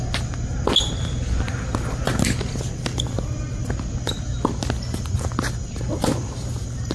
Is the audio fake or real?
real